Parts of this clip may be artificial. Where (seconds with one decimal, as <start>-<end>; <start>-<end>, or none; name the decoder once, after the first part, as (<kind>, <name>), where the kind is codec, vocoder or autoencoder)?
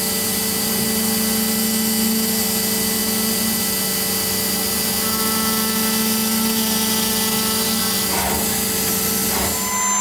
none